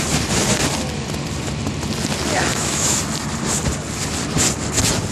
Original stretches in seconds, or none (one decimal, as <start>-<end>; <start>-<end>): 0.0-2.5; 3.0-5.1